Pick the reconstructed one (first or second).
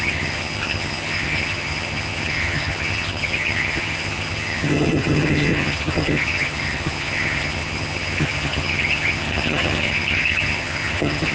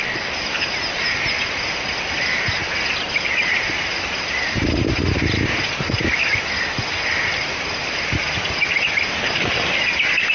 first